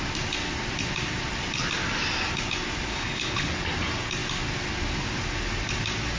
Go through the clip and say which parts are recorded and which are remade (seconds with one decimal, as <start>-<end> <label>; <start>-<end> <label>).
0.0-2.9 recorded; 2.9-3.5 remade; 3.5-6.2 recorded